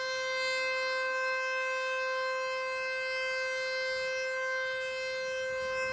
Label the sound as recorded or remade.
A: recorded